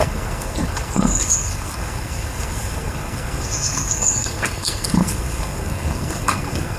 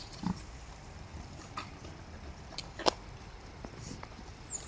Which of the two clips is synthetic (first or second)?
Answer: first